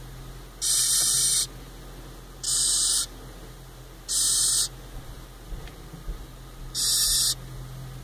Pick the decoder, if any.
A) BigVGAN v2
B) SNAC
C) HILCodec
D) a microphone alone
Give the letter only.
D